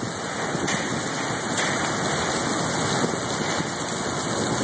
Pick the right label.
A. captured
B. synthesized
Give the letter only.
A